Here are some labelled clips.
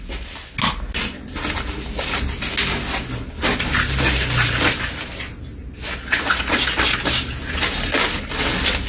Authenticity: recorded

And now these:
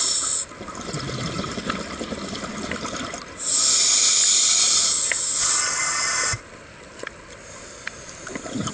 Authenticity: recorded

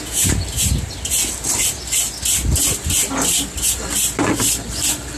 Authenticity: recorded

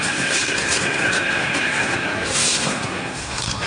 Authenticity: remade